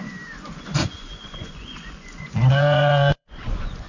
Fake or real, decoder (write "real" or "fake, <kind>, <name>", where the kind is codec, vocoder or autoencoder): fake, vocoder, Vocos